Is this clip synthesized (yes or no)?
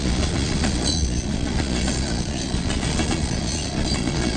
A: yes